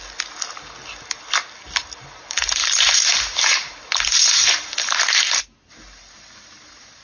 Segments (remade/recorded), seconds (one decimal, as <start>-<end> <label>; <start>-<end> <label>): 0.0-7.0 recorded

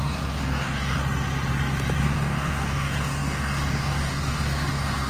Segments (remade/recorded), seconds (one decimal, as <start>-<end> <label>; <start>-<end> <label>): 0.0-1.0 remade; 1.0-2.0 recorded; 2.0-5.1 remade

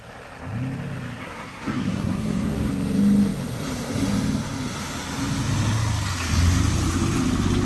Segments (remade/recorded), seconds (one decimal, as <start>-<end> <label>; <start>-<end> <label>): 0.0-1.2 recorded; 1.2-2.7 remade; 2.7-7.7 recorded

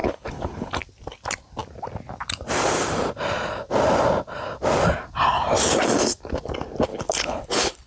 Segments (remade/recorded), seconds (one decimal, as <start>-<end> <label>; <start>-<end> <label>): 0.0-0.7 remade; 0.7-6.9 recorded; 6.9-7.9 remade